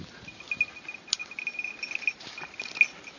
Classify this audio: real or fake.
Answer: real